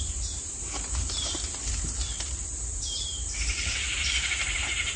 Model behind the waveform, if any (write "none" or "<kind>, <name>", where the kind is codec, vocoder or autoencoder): vocoder, BigVGAN v2